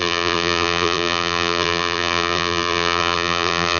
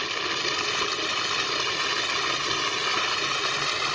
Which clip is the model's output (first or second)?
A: first